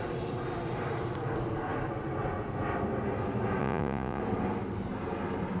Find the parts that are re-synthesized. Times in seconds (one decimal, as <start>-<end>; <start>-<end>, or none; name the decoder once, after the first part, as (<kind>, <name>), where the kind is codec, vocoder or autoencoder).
3.6-4.2 (vocoder, Vocos)